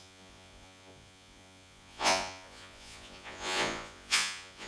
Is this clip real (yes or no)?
no